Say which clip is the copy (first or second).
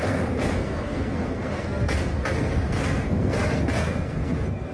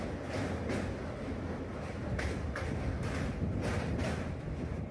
first